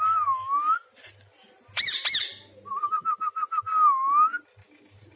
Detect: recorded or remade recorded